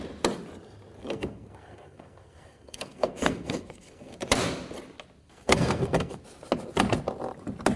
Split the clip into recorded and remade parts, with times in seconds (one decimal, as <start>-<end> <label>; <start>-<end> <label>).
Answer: 0.0-1.0 recorded; 1.0-4.2 remade; 4.2-5.2 recorded; 5.2-6.2 remade; 6.2-7.8 recorded